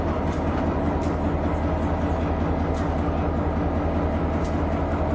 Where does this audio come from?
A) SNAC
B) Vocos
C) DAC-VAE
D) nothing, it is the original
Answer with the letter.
D